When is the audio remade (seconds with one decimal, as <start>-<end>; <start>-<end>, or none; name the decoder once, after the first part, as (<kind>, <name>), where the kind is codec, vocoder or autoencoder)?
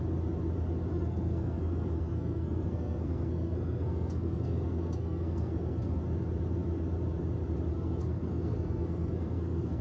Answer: 0.9-6.0 (codec, SNAC); 7.7-9.8